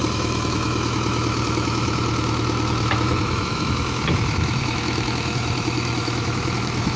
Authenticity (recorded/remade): remade